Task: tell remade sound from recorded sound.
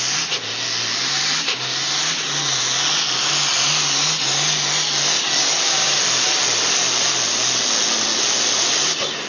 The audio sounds recorded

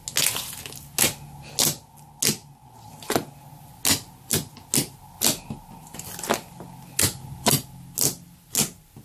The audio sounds recorded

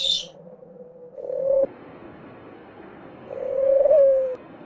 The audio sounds remade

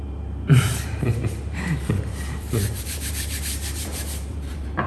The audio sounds remade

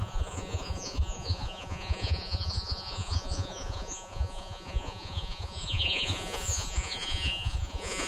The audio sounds remade